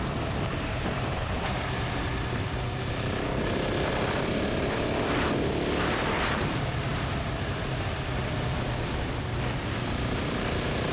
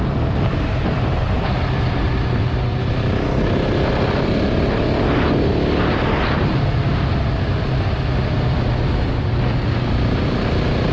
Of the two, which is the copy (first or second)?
first